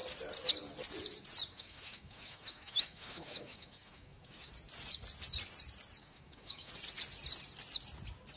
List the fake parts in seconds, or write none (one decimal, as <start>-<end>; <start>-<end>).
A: 1.5-4.5; 6.0-6.7